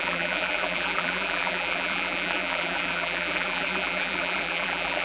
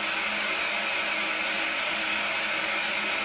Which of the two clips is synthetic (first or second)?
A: first